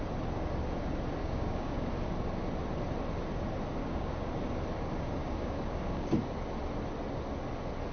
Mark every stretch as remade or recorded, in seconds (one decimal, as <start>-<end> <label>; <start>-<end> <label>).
0.0-1.2 recorded; 1.2-1.9 remade; 1.9-3.8 recorded; 3.8-4.3 remade; 4.3-5.2 recorded; 5.2-6.2 remade; 6.2-7.9 recorded